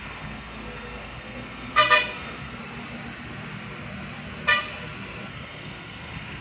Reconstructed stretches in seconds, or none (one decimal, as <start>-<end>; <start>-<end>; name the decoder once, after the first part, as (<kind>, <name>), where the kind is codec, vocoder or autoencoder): 0.0-2.6 (codec, SNAC); 5.3-6.4